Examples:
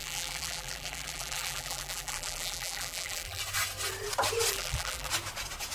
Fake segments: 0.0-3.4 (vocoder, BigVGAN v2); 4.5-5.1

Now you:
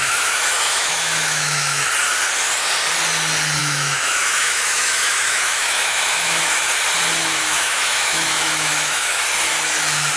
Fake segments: 0.0-1.9 (autoencoder, DAC-VAE); 3.6-6.7; 7.2-9.2

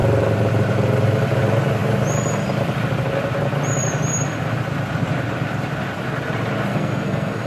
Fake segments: 6.7-7.5 (codec, SNAC)

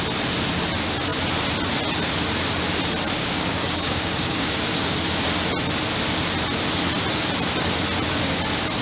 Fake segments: 3.2-4.5 (codec, DAC)